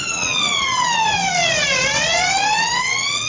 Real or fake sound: fake